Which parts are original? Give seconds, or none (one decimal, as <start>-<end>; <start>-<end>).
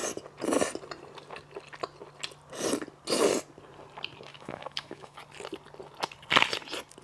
0.0-4.3; 5.2-7.0